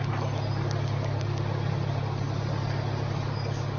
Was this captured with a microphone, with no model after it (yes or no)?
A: yes